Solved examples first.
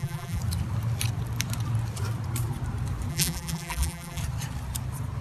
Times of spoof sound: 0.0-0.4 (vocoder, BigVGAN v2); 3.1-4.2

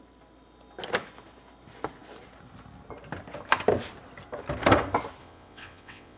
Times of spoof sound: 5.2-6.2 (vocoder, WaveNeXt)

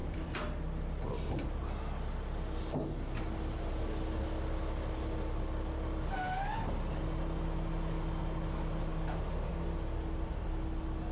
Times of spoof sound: 0.0-1.6 (vocoder, BigVGAN v2)

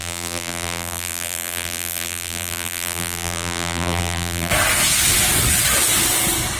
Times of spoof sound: 0.0-4.5 (vocoder, BigVGAN v2)